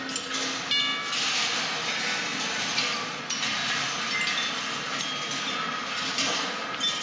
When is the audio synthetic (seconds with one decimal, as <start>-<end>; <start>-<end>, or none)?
none